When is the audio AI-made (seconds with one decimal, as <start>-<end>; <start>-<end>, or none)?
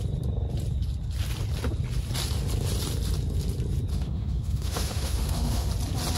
3.9-5.7